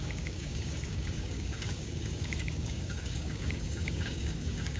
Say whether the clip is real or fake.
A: fake